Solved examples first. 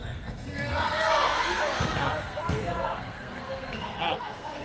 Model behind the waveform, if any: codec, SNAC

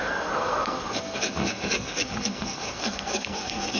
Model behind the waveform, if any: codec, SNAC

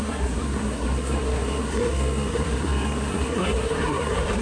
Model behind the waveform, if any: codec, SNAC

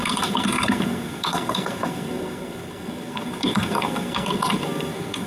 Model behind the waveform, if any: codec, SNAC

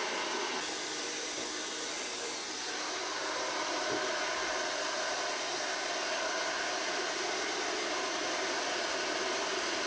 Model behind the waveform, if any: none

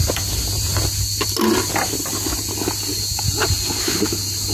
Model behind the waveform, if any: none